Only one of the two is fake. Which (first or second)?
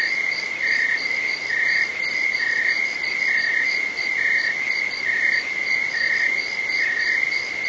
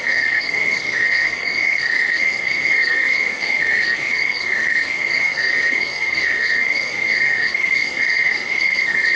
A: second